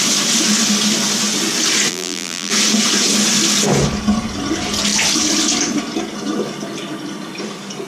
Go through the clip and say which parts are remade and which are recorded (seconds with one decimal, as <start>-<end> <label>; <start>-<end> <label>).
0.0-1.9 recorded; 1.9-2.5 remade; 2.5-7.9 recorded